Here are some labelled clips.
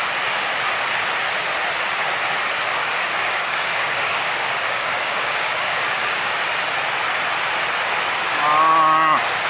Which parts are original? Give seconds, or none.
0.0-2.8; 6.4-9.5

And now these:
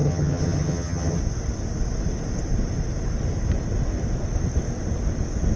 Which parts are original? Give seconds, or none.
1.2-5.6

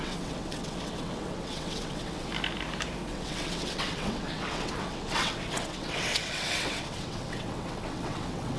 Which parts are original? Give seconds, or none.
2.3-3.1